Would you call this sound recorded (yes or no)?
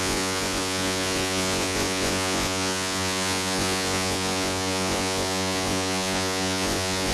no